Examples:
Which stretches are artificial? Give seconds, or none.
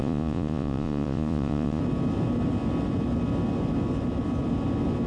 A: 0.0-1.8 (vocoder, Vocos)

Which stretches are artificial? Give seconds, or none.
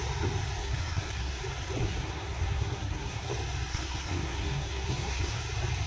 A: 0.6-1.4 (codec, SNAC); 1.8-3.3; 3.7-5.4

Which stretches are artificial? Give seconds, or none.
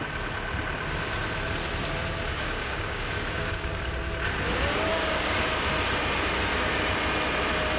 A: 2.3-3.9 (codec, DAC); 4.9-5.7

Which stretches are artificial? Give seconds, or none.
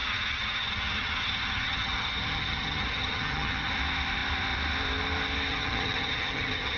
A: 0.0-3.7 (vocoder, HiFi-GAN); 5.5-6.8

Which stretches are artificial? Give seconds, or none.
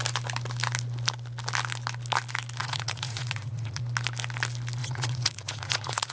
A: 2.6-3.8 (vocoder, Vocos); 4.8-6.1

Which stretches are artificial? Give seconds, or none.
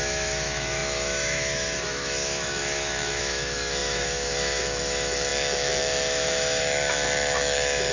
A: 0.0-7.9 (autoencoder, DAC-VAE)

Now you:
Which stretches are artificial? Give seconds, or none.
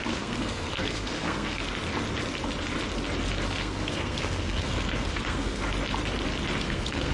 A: 0.0-1.6 (codec, SNAC); 3.6-5.6; 6.6-7.1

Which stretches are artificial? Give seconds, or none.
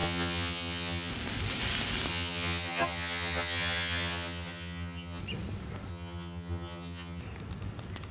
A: 0.0-1.1 (vocoder, HiFi-GAN); 2.1-5.2; 5.9-7.2